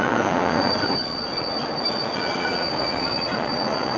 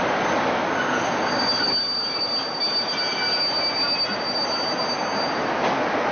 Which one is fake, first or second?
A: first